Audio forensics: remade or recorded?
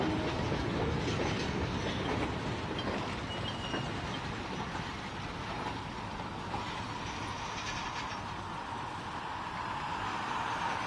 recorded